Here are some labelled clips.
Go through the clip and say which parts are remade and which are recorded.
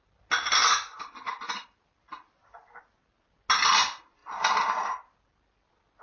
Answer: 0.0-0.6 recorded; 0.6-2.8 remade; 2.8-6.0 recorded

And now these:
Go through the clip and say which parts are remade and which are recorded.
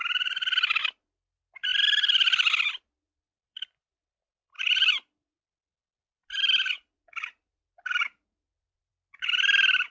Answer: 0.0-1.7 recorded; 1.7-2.6 remade; 2.6-3.2 recorded; 3.2-6.7 remade; 6.7-9.9 recorded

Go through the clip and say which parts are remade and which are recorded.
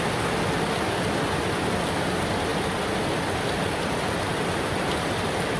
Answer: 0.0-2.5 recorded; 2.5-5.6 remade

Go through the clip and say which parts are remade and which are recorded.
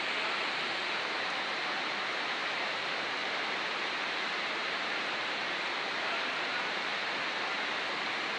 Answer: 0.0-0.8 recorded; 0.8-2.7 remade; 2.7-3.2 recorded; 3.2-7.1 remade; 7.1-8.4 recorded